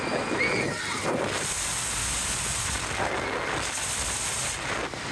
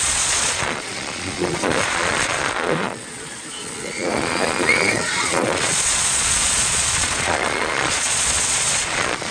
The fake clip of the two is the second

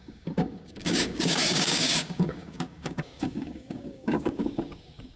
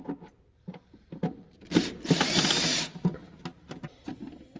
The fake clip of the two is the first